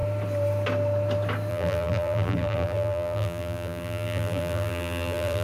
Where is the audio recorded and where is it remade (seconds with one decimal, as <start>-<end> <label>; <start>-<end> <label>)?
0.0-1.5 recorded; 1.5-5.4 remade